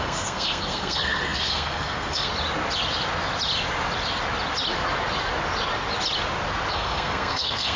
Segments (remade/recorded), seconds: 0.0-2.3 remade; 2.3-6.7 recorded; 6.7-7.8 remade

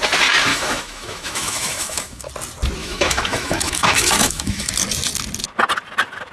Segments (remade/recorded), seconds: 0.0-0.5 recorded; 0.5-2.3 remade; 2.3-2.8 recorded; 2.8-4.7 remade; 4.7-6.3 recorded